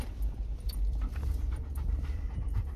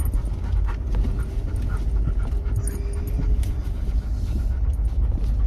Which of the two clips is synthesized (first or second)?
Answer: first